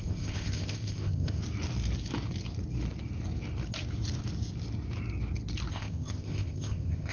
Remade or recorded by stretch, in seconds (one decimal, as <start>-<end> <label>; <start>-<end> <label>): 0.0-1.4 remade; 1.4-5.7 recorded; 5.7-7.1 remade